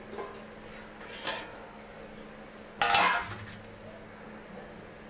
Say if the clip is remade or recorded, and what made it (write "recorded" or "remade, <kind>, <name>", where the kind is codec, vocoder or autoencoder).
recorded